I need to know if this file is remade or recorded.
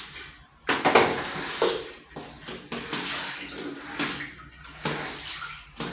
recorded